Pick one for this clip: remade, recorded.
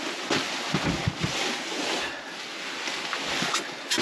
recorded